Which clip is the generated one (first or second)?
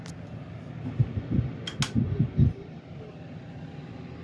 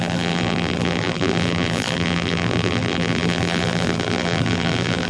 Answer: second